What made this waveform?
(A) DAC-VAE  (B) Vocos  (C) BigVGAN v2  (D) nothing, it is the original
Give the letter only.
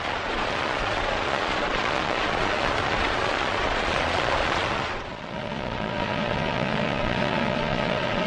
B